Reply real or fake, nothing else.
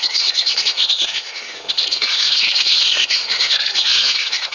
fake